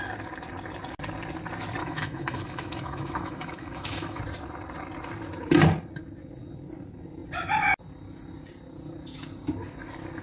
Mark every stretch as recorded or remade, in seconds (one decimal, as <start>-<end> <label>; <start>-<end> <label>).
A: 0.0-1.8 recorded; 1.8-4.2 remade; 4.2-10.2 recorded